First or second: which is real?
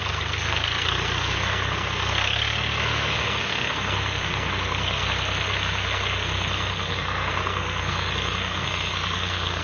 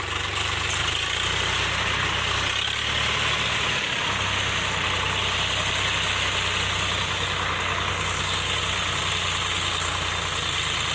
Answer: second